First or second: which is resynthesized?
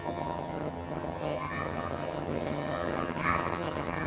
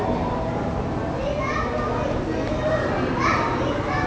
first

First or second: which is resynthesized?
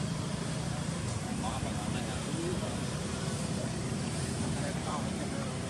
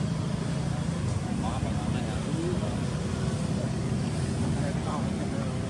first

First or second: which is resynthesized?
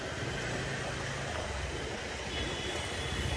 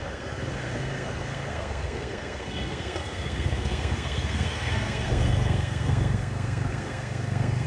second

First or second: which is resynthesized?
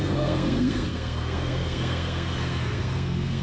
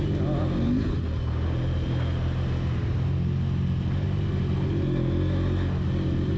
first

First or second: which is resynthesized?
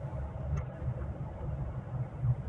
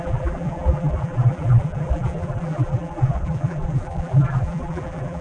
second